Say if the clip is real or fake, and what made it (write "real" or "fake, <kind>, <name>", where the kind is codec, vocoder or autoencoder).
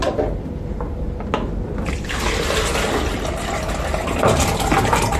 real